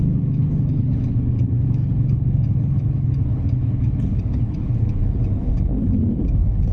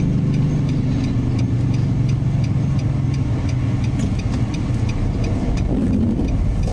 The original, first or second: second